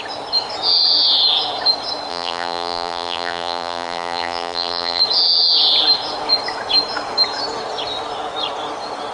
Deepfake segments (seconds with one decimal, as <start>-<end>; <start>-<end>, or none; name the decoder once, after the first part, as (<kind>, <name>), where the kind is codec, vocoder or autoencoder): 2.1-5.0 (vocoder, BigVGAN v2)